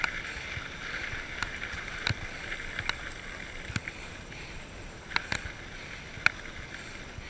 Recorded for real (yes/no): yes